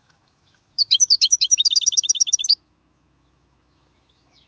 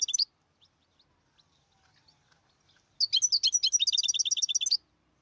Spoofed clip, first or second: first